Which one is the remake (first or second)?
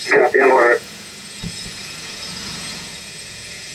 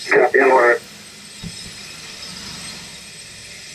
first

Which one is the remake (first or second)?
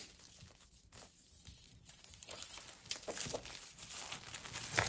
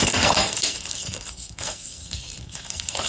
second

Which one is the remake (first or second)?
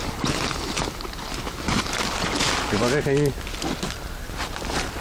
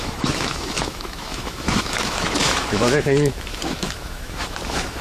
second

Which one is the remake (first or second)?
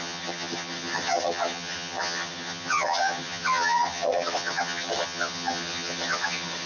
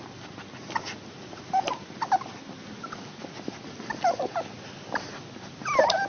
first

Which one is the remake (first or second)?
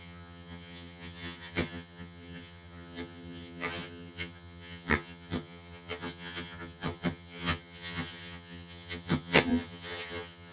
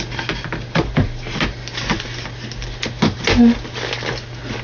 first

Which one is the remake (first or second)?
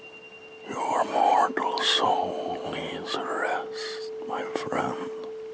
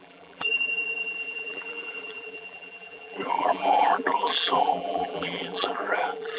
second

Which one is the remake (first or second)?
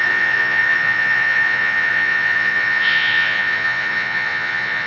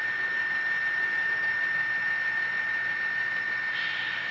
first